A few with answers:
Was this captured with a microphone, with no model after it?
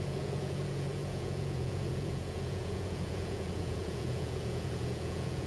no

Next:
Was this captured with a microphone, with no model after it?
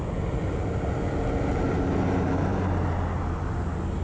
yes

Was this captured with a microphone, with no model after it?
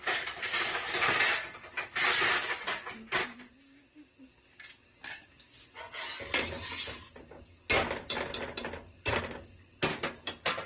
yes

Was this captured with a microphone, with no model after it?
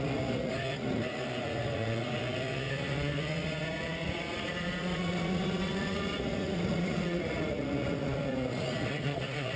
no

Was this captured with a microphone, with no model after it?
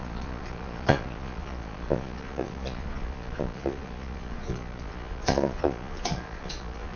no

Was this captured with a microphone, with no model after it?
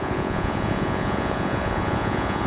no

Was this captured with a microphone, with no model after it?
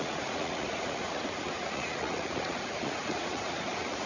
no